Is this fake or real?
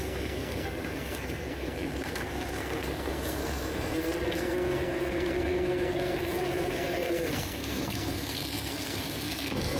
fake